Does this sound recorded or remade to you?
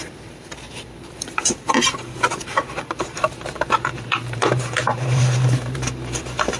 remade